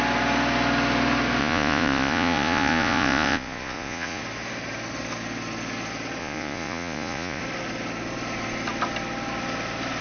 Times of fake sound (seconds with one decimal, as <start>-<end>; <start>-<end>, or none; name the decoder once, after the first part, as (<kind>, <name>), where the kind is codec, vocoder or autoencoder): 1.4-4.2 (vocoder, Vocos); 6.2-7.4